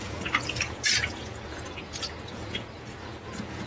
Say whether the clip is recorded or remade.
remade